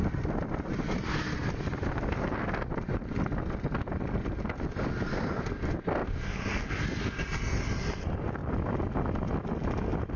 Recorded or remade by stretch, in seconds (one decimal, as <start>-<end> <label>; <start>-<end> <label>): 0.0-10.2 recorded